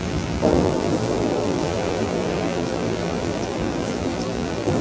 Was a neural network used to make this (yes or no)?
yes